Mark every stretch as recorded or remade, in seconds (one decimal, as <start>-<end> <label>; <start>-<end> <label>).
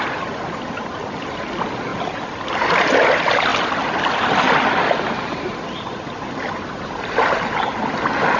0.0-8.4 recorded